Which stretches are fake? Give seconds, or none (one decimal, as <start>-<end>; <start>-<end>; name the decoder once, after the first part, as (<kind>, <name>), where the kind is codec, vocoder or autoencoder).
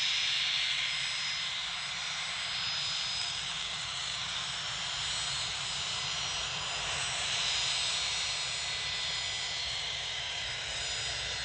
3.2-4.4 (codec, DAC); 9.6-10.8